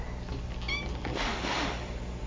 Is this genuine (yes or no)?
yes